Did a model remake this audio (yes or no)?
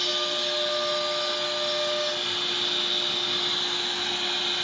no